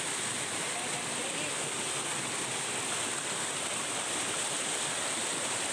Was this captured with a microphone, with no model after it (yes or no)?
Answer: yes